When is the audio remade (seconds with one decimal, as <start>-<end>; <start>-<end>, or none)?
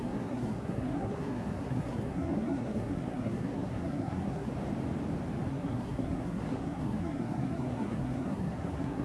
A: 0.0-4.5; 5.5-9.0